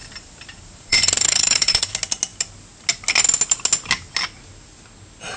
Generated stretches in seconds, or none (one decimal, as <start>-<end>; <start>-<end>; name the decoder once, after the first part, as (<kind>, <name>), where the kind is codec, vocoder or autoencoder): 0.0-1.9 (vocoder, BigVGAN v2)